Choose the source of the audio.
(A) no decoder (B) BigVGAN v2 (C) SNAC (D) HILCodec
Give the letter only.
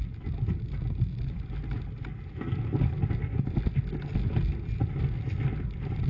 A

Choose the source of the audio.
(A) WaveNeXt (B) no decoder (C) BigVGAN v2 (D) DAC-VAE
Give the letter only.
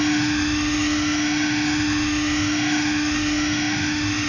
D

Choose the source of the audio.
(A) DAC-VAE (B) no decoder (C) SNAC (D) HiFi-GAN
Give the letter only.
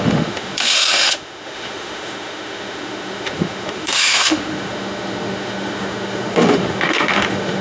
A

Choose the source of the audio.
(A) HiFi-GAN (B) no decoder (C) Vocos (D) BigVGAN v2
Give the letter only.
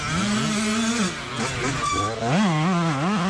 B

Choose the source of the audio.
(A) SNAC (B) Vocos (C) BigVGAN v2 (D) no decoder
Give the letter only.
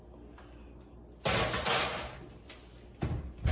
D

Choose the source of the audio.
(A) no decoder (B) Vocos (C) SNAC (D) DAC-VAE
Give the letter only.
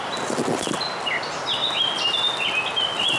A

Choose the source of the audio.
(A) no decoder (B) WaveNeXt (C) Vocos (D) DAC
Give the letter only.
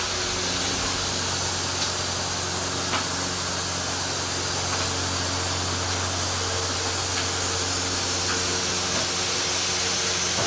A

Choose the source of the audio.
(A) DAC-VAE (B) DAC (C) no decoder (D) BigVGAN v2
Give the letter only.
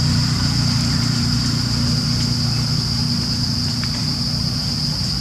C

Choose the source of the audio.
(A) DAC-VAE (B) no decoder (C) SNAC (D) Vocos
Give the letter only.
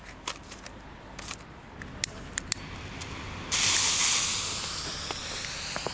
B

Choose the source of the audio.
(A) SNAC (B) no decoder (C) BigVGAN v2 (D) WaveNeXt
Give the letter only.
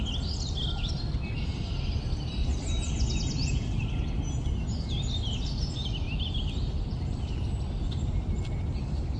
B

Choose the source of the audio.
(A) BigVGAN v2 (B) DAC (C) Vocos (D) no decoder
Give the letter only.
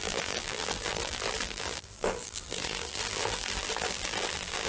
A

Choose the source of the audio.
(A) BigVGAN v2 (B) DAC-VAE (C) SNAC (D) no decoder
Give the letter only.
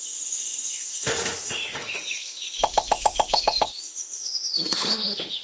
B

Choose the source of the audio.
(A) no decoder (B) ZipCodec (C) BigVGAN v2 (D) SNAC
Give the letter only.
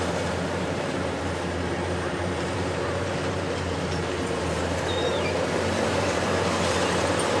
C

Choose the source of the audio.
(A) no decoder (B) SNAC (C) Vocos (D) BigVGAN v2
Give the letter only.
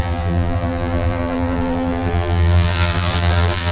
D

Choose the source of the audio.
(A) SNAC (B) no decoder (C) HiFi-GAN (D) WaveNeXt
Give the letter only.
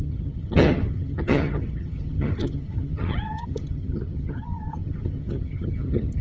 C